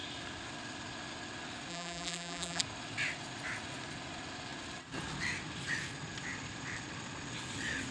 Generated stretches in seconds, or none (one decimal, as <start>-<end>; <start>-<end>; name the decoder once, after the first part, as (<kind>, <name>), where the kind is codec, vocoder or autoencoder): 1.7-2.6 (vocoder, BigVGAN v2)